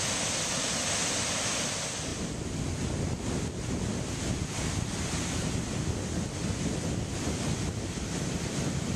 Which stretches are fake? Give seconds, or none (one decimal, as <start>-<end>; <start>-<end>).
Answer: none